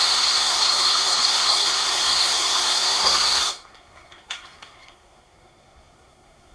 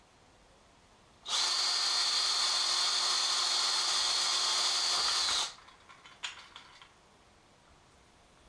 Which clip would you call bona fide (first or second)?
second